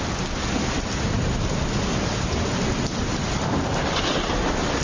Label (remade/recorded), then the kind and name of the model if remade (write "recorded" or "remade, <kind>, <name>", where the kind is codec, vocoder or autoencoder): recorded